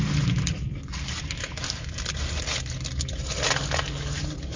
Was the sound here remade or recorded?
recorded